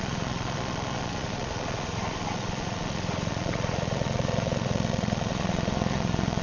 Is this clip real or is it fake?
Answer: fake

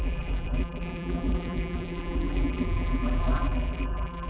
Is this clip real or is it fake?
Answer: fake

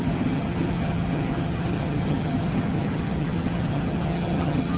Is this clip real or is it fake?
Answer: fake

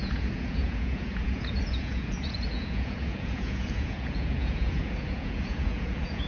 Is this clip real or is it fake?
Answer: fake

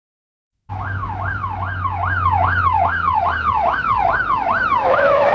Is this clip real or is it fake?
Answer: fake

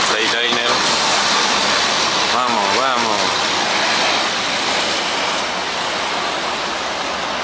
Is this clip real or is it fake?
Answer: fake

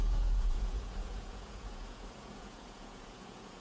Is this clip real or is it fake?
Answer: fake